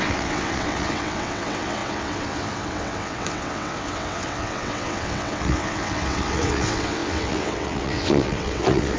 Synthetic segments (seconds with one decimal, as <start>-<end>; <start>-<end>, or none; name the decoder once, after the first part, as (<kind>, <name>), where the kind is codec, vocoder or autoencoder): 0.0-9.0 (vocoder, WaveNeXt)